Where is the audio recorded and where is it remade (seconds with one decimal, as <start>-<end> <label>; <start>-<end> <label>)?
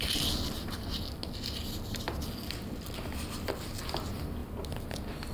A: 0.0-5.3 recorded